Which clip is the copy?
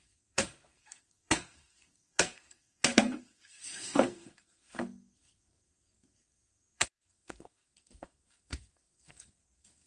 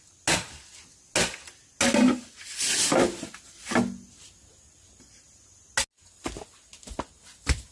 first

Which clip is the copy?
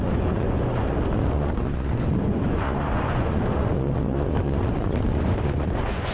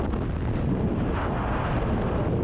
first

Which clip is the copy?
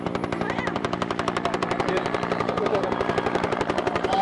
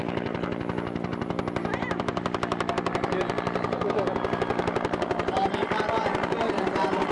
first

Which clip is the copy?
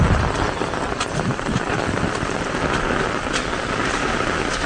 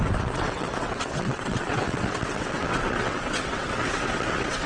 second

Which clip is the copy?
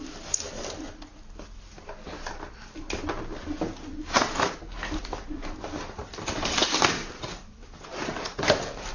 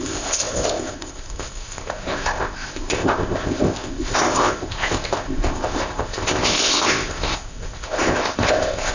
second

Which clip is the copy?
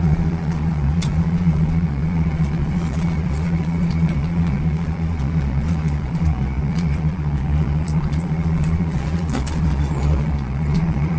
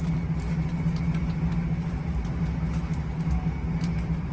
first